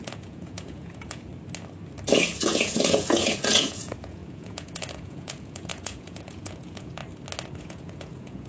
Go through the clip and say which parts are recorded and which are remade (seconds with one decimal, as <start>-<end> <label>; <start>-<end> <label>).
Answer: 0.0-1.3 remade; 1.3-2.4 recorded; 2.4-7.0 remade; 7.0-7.6 recorded; 7.6-8.5 remade